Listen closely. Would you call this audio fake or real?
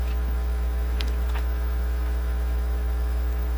fake